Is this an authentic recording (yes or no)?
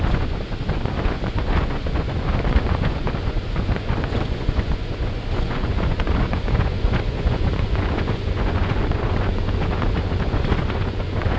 no